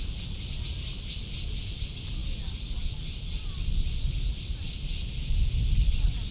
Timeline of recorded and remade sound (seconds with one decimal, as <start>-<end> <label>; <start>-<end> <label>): 0.0-6.3 recorded